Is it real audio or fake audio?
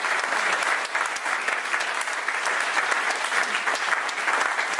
real